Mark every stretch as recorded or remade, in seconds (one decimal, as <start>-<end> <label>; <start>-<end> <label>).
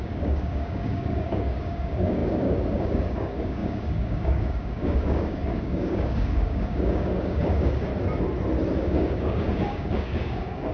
0.0-7.9 remade; 7.9-8.8 recorded; 8.8-10.7 remade